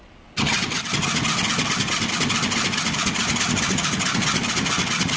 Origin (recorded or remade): recorded